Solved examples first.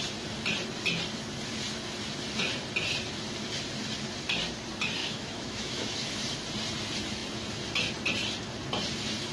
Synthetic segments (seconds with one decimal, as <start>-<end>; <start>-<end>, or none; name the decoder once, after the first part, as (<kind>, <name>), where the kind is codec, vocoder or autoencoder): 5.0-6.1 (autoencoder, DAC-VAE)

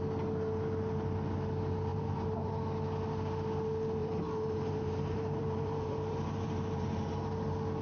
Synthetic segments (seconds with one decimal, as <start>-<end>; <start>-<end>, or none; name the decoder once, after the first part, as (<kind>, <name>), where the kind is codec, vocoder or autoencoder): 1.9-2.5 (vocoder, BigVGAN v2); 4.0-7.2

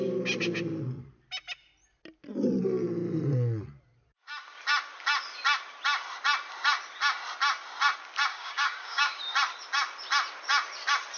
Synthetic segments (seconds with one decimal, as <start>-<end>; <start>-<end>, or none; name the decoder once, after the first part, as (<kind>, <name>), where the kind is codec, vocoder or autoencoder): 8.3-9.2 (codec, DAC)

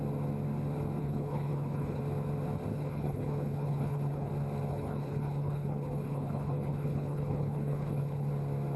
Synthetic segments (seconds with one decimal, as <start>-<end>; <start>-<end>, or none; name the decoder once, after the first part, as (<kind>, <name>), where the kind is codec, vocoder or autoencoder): 1.0-2.0 (codec, HILCodec); 2.7-4.3; 4.7-8.3